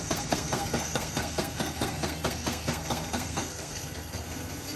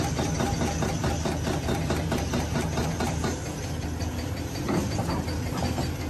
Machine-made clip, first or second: first